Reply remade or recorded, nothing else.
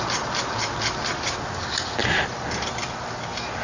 recorded